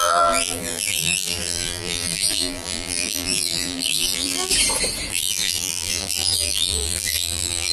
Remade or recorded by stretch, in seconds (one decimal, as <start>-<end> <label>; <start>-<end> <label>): 0.0-4.5 remade; 4.5-5.1 recorded; 5.1-7.7 remade